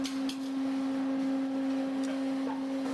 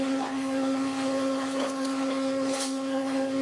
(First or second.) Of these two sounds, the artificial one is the second